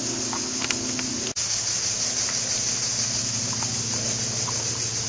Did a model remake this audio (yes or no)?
no